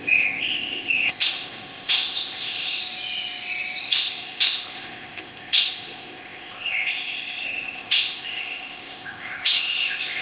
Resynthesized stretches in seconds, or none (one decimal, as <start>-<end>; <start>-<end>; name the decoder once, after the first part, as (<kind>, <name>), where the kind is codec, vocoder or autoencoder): 0.0-2.8 (codec, ZipCodec); 3.8-10.2